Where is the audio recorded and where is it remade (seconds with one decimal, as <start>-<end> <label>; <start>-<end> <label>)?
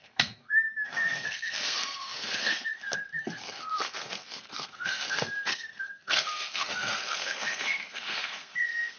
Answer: 0.0-9.0 remade